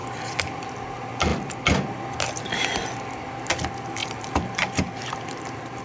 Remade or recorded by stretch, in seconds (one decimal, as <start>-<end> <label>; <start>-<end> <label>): 0.0-0.6 remade; 0.6-4.0 recorded; 4.0-5.8 remade